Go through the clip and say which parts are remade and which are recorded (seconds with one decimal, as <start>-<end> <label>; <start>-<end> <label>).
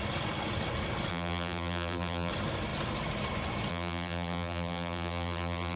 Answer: 0.0-1.1 recorded; 1.1-2.3 remade; 2.3-3.7 recorded; 3.7-5.8 remade